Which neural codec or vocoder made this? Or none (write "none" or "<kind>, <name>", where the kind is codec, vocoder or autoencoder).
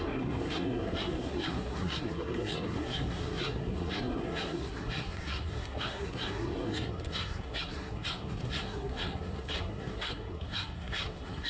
codec, SNAC